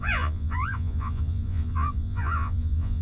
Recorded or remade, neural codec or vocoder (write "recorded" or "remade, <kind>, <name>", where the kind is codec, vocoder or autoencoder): remade, vocoder, Vocos